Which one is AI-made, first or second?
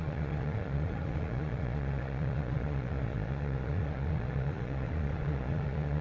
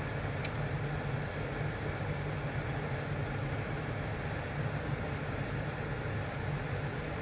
first